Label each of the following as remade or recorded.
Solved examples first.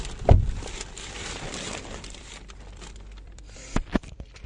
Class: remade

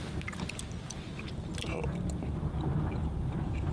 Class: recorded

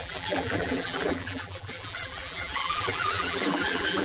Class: remade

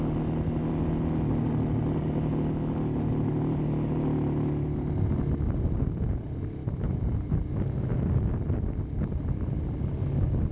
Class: recorded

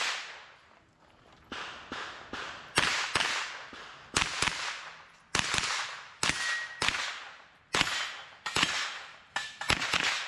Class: recorded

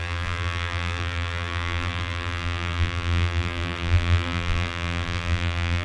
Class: remade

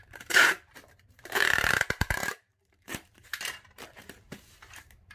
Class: remade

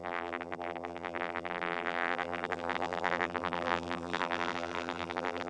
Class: remade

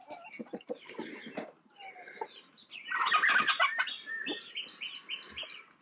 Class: recorded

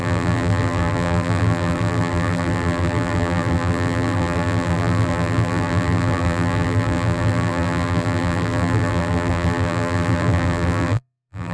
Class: remade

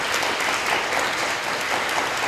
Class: recorded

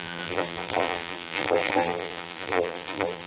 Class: remade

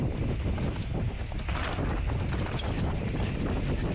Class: recorded